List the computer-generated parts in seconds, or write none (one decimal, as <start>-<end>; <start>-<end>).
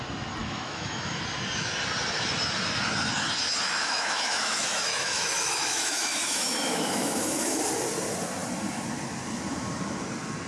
0.4-1.2; 3.8-7.6